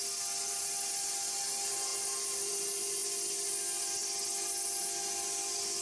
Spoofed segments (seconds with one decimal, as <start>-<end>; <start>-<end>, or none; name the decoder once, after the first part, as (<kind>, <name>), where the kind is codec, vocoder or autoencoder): none